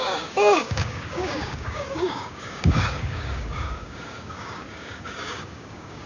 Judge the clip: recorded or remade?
remade